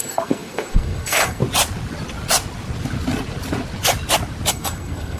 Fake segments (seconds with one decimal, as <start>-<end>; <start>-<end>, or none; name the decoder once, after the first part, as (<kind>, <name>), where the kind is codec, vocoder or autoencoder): 0.0-1.4 (codec, SNAC); 4.5-5.2